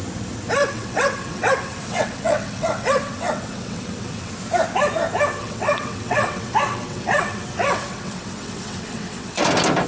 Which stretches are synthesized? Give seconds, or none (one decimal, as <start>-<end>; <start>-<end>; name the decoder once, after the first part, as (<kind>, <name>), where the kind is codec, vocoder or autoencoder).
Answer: 0.6-4.3 (vocoder, WaveNeXt); 5.4-9.4